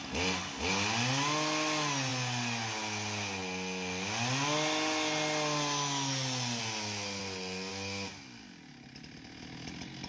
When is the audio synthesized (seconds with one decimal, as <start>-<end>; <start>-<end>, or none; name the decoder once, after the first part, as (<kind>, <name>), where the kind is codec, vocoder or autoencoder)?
none